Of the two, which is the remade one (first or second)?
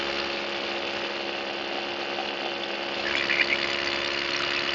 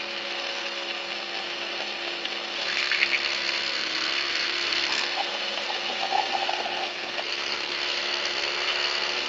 second